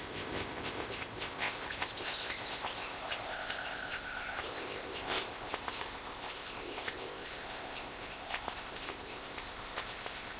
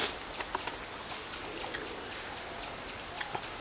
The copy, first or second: first